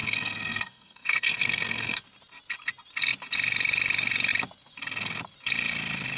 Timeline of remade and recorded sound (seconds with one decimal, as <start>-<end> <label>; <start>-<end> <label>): 0.0-2.0 remade; 2.0-6.2 recorded